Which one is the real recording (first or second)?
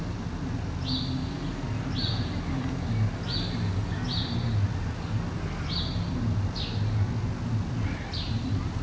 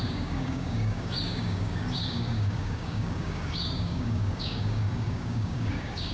first